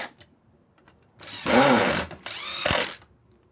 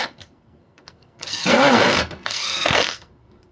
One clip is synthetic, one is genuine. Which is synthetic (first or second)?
second